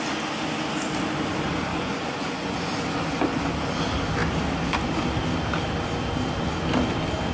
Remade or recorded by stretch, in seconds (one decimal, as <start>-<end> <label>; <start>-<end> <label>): 0.0-1.7 recorded; 1.7-2.6 remade; 2.6-7.3 recorded